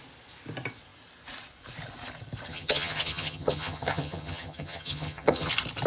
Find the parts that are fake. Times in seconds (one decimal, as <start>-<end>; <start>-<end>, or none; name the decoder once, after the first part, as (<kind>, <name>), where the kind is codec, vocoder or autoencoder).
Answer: 2.5-5.5 (vocoder, HiFi-GAN)